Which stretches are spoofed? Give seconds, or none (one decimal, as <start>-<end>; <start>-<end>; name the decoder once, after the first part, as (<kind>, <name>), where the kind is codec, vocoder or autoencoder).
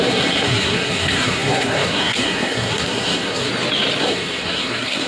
0.0-3.5 (codec, SNAC); 4.0-5.1